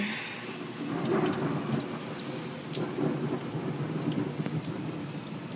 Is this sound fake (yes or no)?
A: no